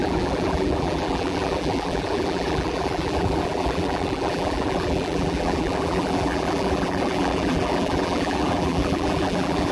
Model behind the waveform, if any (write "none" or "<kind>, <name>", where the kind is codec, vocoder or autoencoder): vocoder, BigVGAN v2